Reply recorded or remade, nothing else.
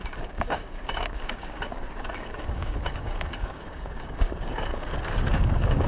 remade